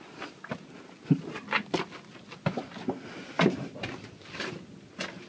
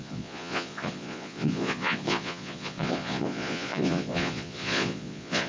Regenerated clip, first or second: second